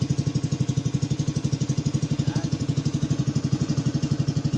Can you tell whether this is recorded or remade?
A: remade